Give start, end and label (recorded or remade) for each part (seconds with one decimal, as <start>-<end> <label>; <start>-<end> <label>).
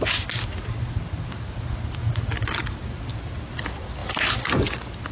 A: 0.0-2.0 remade; 2.0-3.1 recorded; 3.1-4.0 remade; 4.0-4.5 recorded; 4.5-5.1 remade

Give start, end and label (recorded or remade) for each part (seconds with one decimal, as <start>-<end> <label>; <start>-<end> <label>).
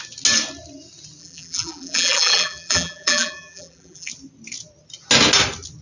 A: 0.0-1.2 recorded; 1.2-4.1 remade; 4.1-5.8 recorded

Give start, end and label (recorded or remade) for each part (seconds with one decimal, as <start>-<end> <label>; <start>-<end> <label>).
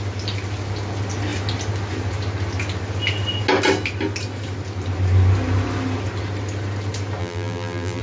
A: 0.0-7.2 recorded; 7.2-8.0 remade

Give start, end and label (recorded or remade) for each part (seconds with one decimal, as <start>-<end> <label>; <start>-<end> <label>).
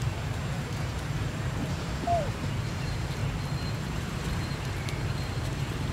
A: 0.0-3.2 remade; 3.2-3.7 recorded; 3.7-5.9 remade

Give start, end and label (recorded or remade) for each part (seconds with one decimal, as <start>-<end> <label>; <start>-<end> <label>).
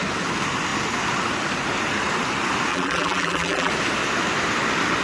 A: 0.0-2.7 recorded; 2.7-3.7 remade; 3.7-5.0 recorded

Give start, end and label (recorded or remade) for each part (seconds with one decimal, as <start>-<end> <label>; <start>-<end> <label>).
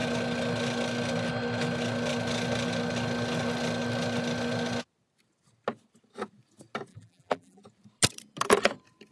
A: 0.0-6.9 recorded; 6.9-7.6 remade; 7.6-9.1 recorded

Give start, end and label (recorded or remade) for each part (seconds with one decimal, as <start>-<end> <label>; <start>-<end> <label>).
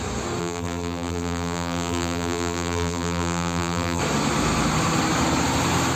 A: 0.0-0.4 recorded; 0.4-4.0 remade; 4.0-6.0 recorded